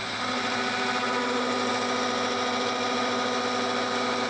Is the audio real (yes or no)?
yes